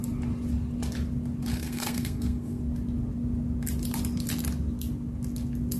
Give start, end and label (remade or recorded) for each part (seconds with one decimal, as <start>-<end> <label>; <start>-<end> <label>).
0.0-1.5 recorded; 1.5-2.6 remade; 2.6-5.8 recorded